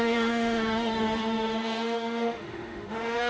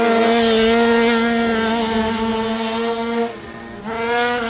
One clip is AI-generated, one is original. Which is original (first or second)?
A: second